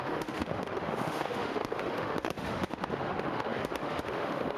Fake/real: fake